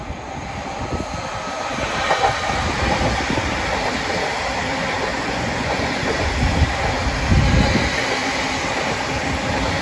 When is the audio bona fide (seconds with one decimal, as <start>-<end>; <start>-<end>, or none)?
0.0-5.1; 6.3-9.8